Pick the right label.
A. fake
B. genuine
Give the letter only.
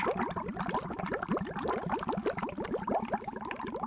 B